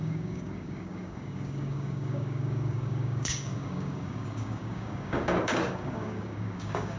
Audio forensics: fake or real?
fake